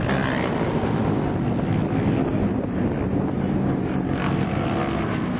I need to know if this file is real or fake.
real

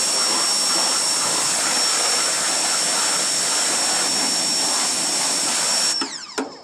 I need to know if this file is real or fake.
real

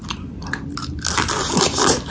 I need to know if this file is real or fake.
real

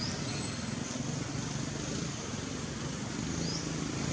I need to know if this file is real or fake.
real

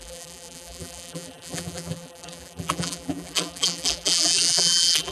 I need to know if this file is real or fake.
fake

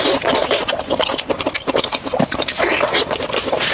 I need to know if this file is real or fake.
real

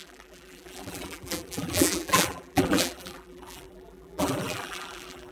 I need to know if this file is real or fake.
fake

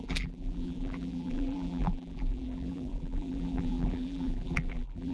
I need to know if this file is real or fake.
fake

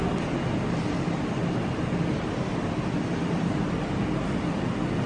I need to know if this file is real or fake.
real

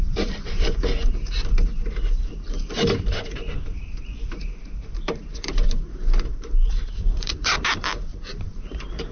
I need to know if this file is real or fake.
fake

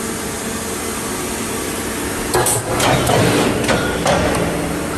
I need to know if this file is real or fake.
real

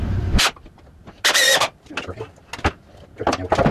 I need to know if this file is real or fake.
real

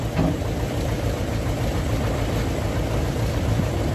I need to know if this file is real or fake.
real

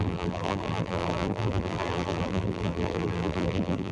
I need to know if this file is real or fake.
fake